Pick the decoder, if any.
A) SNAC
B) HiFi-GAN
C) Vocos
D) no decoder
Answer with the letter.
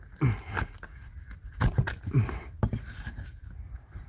D